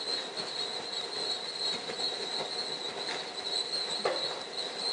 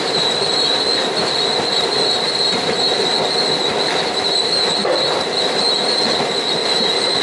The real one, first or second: first